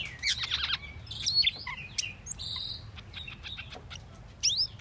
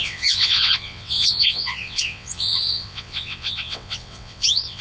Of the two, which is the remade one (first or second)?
second